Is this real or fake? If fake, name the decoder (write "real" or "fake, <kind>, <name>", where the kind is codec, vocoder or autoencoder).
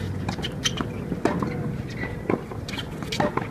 real